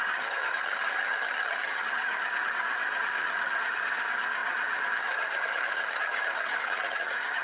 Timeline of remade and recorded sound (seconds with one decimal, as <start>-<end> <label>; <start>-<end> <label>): 0.0-7.4 remade